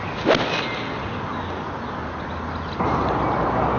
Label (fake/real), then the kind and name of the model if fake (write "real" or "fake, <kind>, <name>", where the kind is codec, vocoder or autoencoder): real